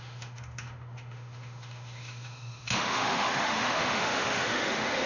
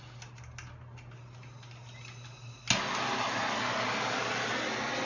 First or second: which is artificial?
first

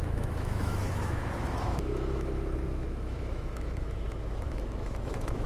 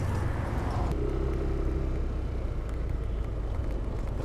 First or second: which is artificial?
first